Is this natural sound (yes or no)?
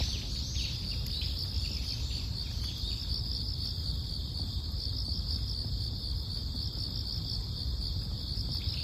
yes